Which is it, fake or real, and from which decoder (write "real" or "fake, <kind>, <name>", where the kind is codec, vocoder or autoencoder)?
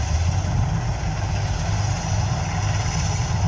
real